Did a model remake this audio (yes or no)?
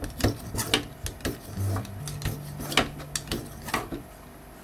no